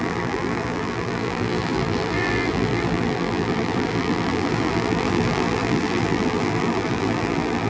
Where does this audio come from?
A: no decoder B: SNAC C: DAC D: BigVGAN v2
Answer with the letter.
D